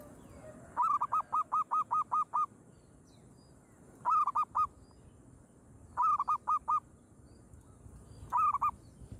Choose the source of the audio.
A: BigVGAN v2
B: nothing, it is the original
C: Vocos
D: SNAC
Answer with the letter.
B